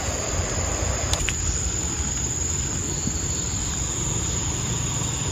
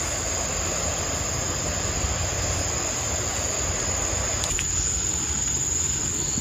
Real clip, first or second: second